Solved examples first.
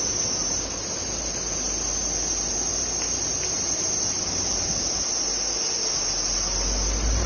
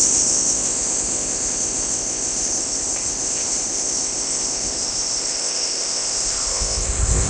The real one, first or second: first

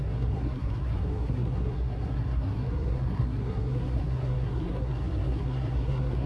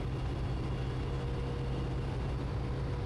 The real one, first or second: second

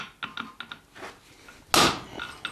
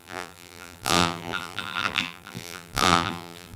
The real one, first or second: first